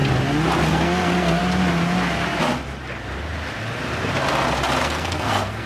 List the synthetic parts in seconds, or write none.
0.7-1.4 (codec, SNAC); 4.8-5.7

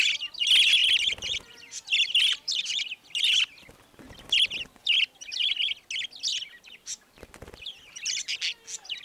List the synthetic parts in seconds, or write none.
0.8-5.2 (vocoder, BigVGAN v2); 6.3-8.4

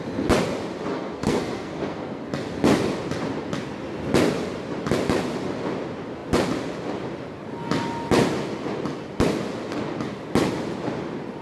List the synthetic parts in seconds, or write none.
0.9-2.2 (codec, SNAC)

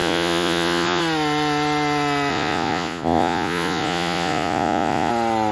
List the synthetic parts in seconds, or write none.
0.0-1.0 (vocoder, Vocos); 2.3-5.1

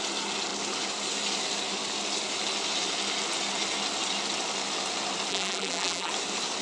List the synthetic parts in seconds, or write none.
5.3-6.1 (vocoder, BigVGAN v2)

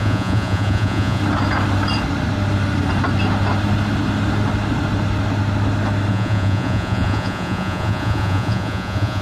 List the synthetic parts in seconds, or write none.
0.0-1.2 (vocoder, Vocos); 6.1-9.2

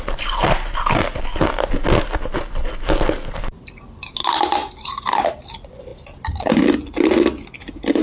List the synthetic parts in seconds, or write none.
none